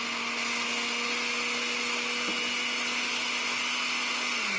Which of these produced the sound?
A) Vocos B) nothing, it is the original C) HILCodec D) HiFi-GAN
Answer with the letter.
B